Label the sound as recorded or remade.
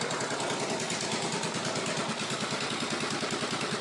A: recorded